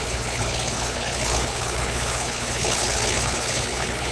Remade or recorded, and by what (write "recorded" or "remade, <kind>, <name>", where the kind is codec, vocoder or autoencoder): remade, codec, HILCodec